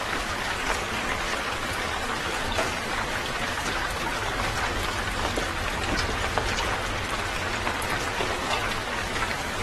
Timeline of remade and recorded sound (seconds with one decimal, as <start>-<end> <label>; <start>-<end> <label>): 0.0-5.3 remade; 5.3-8.2 recorded; 8.2-9.6 remade